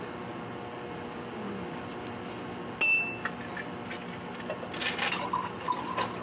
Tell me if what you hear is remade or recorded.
recorded